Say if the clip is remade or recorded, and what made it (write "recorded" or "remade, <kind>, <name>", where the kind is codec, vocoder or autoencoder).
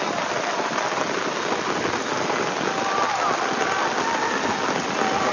recorded